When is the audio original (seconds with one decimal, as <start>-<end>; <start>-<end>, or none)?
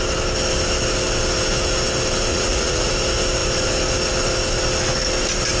0.0-2.3; 2.9-5.6